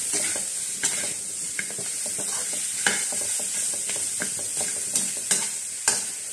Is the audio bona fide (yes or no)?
yes